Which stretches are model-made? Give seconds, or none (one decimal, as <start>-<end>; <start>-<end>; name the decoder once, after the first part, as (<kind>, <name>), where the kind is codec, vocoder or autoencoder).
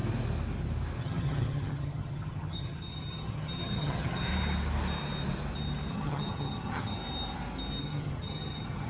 1.0-4.3 (vocoder, HiFi-GAN); 5.9-7.0; 7.8-8.9